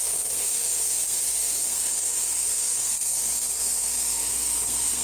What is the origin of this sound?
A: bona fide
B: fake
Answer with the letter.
B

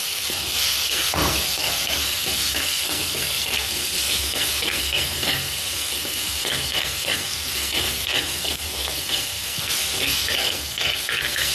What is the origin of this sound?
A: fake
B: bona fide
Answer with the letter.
A